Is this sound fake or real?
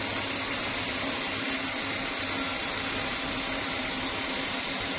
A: real